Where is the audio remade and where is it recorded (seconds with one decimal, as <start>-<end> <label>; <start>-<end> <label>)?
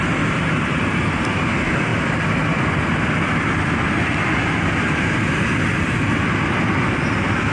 0.0-7.5 recorded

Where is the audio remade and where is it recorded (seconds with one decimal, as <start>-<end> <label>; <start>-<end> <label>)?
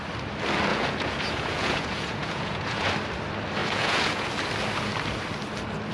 0.0-0.7 recorded; 0.7-2.9 remade; 2.9-3.6 recorded; 3.6-4.3 remade; 4.3-5.9 recorded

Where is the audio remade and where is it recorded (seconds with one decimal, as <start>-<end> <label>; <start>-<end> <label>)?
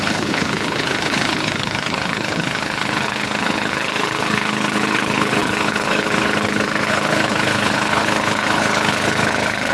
0.0-9.7 remade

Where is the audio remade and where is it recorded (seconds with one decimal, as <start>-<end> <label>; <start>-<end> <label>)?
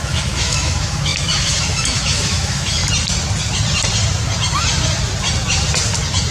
0.0-2.8 remade; 2.8-6.3 recorded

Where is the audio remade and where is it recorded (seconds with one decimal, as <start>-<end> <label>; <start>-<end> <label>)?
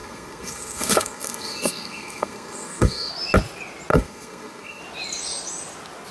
0.0-3.1 remade; 3.1-3.9 recorded; 3.9-4.8 remade; 4.8-6.1 recorded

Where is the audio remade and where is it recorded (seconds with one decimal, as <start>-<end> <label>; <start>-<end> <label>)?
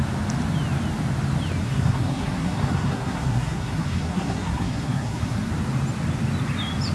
0.0-1.6 recorded; 1.6-5.5 remade; 5.5-6.9 recorded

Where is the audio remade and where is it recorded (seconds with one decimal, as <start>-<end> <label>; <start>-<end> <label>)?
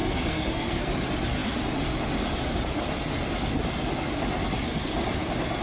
0.0-0.9 remade; 0.9-5.6 recorded